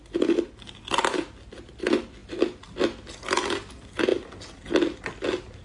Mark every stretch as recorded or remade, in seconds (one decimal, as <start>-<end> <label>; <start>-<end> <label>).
0.0-5.6 recorded